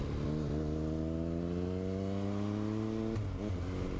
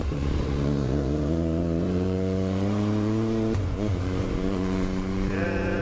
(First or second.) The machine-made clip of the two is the second